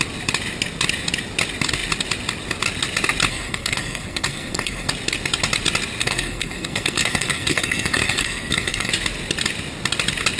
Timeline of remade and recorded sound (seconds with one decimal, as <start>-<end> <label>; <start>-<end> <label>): 0.0-3.3 recorded; 3.3-4.9 remade; 4.9-6.0 recorded; 6.0-8.9 remade; 8.9-10.4 recorded